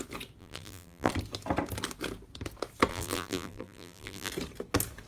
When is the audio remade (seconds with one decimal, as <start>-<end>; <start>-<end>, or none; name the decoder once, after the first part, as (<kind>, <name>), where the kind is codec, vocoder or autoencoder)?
0.4-1.1 (vocoder, BigVGAN v2); 2.9-4.3

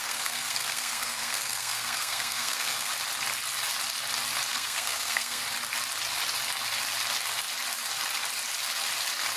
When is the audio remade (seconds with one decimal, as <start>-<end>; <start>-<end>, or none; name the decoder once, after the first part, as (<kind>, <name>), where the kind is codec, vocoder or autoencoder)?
0.0-2.9 (codec, SNAC); 4.5-5.4